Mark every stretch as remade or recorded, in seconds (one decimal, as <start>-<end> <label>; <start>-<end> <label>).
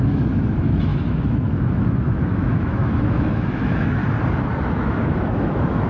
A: 0.0-4.0 remade; 4.0-4.6 recorded; 4.6-5.9 remade